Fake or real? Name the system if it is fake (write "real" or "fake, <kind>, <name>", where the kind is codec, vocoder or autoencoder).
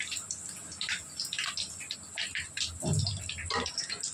real